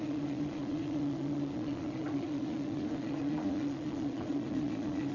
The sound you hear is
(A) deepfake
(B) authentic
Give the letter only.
A